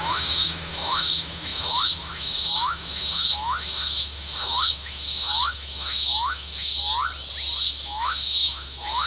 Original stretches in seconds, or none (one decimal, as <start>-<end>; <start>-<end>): 6.8-7.6